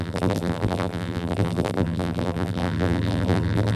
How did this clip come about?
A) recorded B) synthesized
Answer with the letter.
B